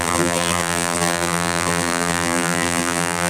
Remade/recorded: remade